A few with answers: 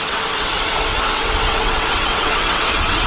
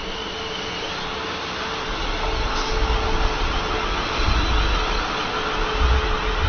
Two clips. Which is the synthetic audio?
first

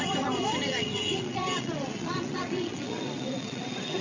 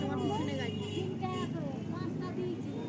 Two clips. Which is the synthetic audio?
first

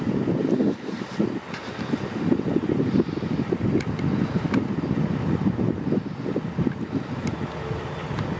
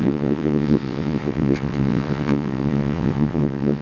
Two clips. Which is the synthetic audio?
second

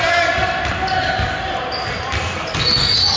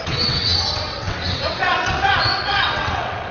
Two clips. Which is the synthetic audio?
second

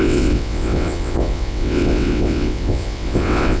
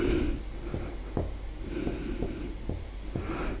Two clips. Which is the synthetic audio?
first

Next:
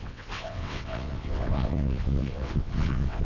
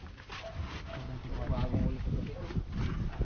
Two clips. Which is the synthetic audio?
first